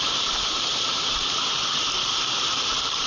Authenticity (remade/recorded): remade